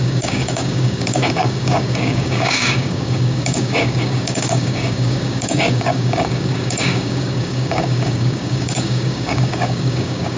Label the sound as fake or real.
fake